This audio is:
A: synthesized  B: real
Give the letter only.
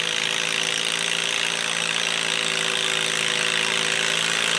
B